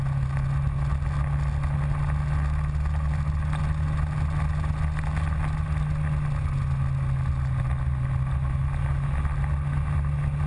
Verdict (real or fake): real